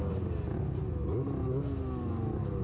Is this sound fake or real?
real